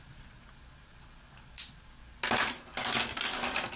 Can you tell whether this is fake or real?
real